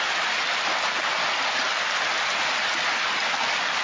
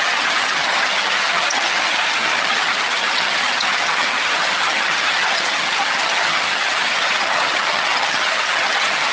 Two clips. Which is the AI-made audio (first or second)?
second